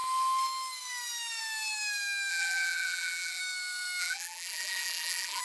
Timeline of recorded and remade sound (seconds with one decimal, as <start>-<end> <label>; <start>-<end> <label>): 0.0-2.3 recorded; 2.3-3.4 remade; 3.4-4.0 recorded; 4.0-5.4 remade